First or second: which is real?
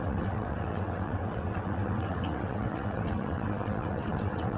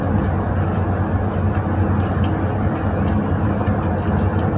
second